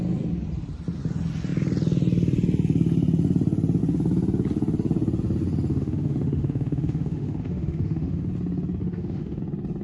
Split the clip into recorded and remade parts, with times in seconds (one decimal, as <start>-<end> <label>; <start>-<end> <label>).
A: 0.0-5.7 recorded; 5.7-8.3 remade; 8.3-8.8 recorded; 8.8-9.4 remade; 9.4-9.8 recorded